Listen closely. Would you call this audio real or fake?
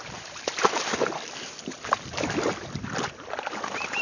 fake